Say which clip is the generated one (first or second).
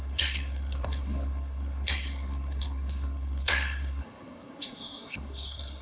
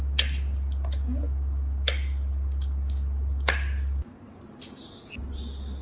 first